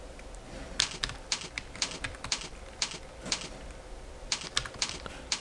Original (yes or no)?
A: yes